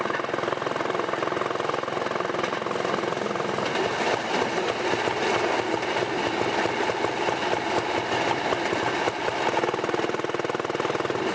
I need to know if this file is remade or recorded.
recorded